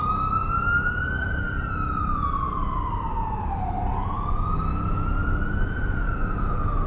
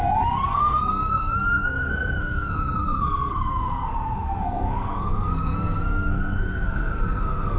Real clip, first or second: first